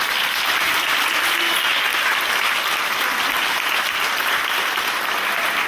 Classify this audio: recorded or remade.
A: recorded